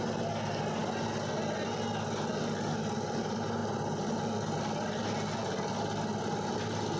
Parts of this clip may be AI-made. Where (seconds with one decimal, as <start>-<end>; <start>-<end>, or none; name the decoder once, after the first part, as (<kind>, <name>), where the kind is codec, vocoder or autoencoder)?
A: none